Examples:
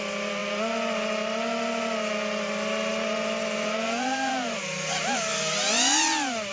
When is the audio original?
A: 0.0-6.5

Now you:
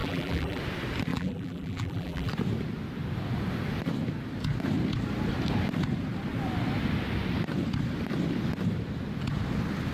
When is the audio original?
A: 0.6-1.1; 2.3-9.9

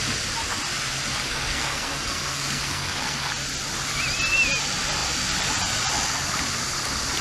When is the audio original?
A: 0.0-1.3; 3.3-7.2

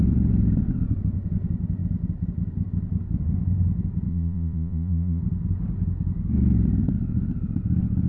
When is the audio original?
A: 0.0-4.1; 5.2-8.1

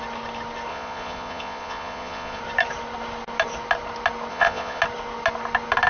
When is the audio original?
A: 0.0-0.7; 2.4-4.3; 4.8-5.9